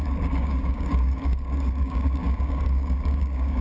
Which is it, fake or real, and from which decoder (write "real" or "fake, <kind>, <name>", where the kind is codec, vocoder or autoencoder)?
fake, codec, DAC